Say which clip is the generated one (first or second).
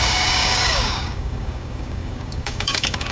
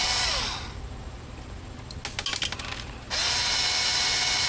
first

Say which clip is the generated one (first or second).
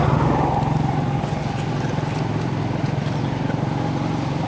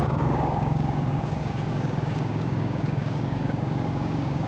second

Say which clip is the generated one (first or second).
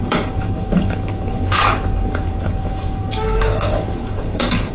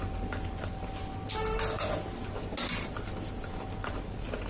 first